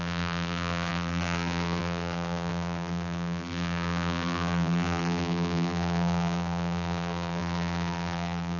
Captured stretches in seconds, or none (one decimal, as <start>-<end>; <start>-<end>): none